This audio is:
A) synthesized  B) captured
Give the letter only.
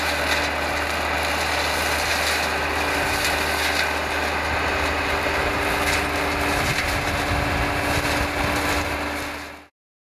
B